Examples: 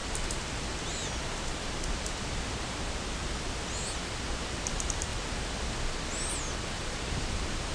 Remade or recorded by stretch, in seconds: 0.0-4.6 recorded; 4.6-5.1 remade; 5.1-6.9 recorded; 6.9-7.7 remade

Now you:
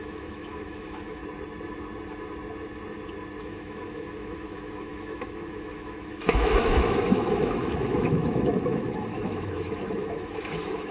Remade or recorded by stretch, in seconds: 0.0-1.2 remade; 1.2-3.4 recorded; 3.4-10.9 remade

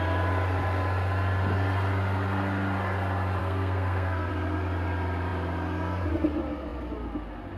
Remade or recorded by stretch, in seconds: 0.0-3.4 recorded; 3.4-4.3 remade; 4.3-7.6 recorded